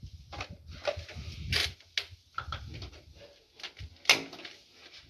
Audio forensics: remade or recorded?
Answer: recorded